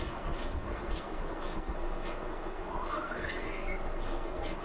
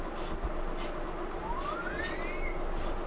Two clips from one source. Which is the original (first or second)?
second